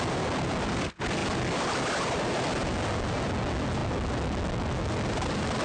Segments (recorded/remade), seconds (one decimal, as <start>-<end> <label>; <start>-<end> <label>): 0.0-5.6 recorded